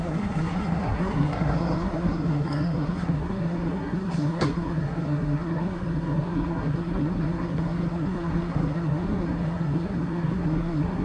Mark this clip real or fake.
fake